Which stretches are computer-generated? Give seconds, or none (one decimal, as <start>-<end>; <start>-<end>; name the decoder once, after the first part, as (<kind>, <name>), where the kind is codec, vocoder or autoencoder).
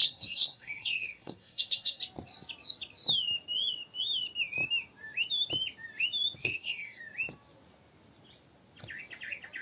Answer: 0.0-2.0 (codec, SNAC); 6.4-7.0